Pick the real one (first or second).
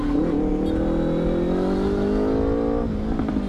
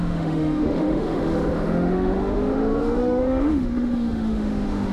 first